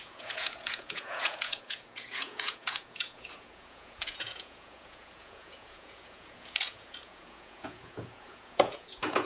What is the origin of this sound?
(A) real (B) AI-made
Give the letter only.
B